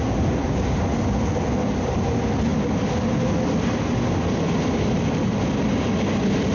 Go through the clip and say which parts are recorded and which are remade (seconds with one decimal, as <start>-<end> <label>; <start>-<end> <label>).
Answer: 0.0-6.5 recorded